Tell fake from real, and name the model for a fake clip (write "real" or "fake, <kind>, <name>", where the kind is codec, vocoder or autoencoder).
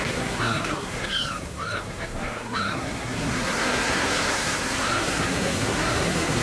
fake, codec, SNAC